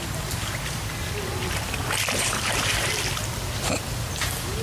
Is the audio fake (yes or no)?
no